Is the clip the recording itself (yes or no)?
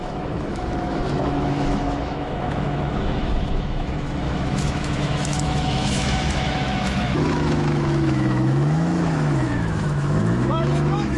no